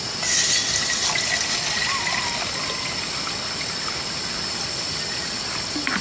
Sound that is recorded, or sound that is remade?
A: recorded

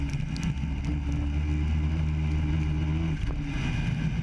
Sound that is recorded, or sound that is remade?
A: recorded